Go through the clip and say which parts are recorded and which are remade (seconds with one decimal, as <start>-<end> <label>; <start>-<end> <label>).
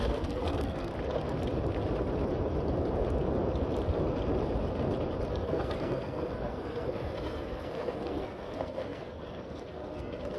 0.0-0.9 remade; 0.9-5.3 recorded; 5.3-10.4 remade